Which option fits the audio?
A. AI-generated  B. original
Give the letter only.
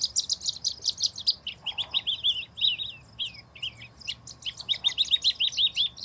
B